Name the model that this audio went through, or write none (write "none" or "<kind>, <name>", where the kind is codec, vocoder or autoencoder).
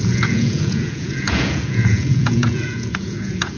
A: vocoder, Vocos